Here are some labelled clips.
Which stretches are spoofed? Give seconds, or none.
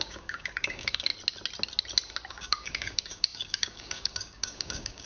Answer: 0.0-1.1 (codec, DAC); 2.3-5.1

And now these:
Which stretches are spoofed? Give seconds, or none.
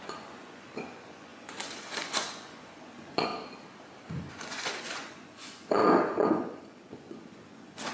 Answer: 0.0-3.3 (vocoder, Vocos); 4.3-7.9